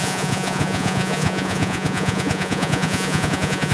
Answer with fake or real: fake